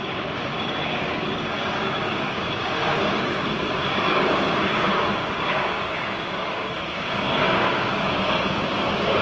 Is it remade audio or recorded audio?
remade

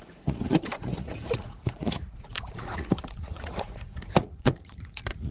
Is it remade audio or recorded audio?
remade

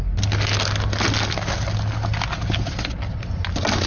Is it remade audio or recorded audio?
recorded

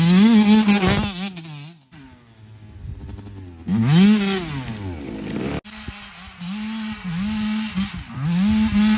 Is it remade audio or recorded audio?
recorded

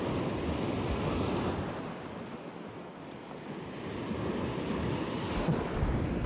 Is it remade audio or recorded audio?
recorded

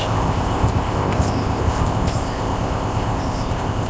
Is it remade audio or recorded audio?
remade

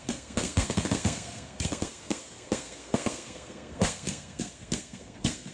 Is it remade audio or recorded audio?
remade